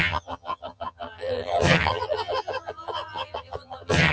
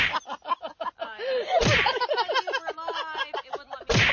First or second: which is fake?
first